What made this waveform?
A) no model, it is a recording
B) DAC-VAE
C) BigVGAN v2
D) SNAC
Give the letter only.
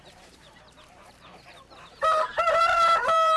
C